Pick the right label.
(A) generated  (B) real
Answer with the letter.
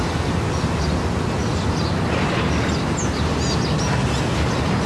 B